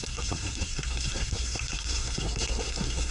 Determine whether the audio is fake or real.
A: fake